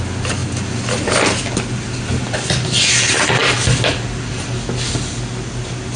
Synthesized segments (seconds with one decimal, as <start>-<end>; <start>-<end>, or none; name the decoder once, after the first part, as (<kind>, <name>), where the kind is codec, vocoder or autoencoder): none